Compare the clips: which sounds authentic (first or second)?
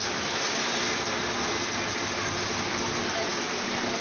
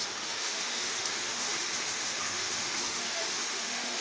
first